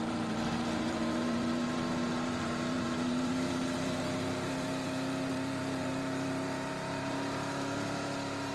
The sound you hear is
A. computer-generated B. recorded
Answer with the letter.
A